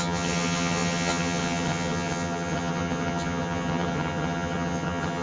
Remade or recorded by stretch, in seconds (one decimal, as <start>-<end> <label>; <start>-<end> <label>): 0.0-5.2 remade